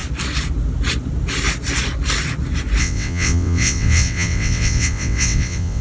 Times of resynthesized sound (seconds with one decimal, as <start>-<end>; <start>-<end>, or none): 2.8-5.8